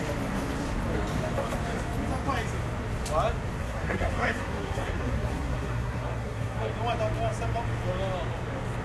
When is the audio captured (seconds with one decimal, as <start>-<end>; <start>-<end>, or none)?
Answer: 0.0-3.6; 6.7-8.8